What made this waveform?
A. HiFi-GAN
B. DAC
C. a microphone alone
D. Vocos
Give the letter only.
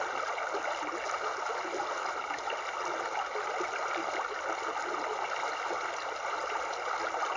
C